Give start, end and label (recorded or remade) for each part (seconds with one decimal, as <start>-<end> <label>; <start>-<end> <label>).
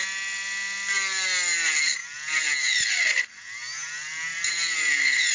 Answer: 0.0-2.0 recorded; 2.0-3.3 remade; 3.3-4.3 recorded; 4.3-5.3 remade